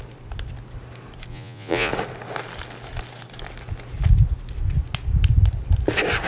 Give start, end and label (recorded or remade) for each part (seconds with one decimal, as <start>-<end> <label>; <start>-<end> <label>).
0.0-1.3 recorded; 1.3-1.9 remade; 1.9-6.3 recorded